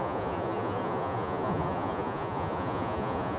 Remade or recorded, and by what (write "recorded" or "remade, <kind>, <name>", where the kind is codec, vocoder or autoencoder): remade, vocoder, Vocos